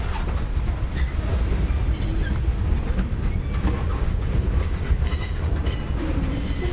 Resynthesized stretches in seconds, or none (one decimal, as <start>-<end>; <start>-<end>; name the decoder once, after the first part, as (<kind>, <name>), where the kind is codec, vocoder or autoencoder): 3.9-5.5 (codec, DAC)